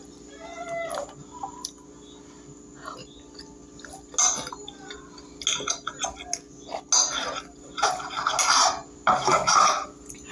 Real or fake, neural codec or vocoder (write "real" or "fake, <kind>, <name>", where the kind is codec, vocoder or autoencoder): real